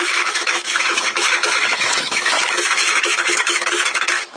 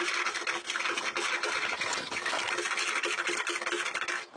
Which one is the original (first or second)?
second